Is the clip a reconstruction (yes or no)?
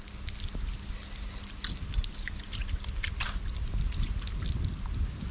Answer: no